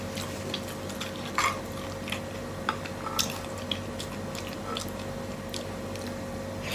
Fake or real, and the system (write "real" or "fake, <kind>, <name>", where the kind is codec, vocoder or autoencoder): real